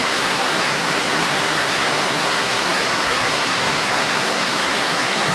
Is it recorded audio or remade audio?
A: remade